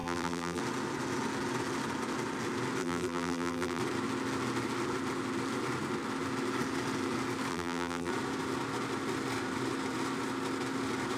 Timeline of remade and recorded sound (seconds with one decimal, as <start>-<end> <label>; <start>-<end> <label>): 0.0-0.6 remade; 0.6-2.8 recorded; 2.8-3.8 remade; 3.8-7.5 recorded; 7.5-8.1 remade; 8.1-11.2 recorded